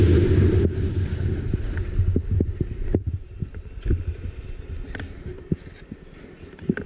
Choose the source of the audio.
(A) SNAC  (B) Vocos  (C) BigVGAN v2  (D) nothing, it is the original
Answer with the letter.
D